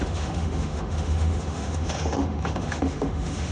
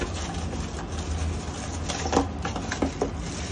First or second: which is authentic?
second